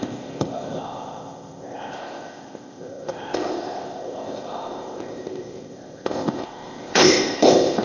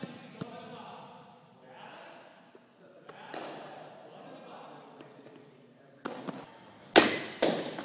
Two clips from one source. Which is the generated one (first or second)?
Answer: first